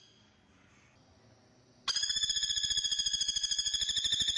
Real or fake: real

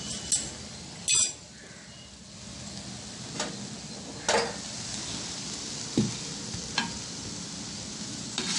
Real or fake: real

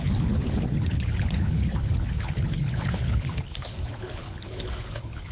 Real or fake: fake